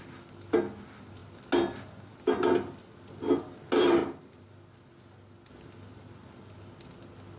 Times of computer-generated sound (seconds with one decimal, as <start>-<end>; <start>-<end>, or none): none